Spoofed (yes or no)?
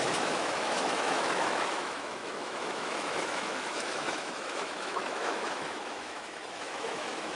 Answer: yes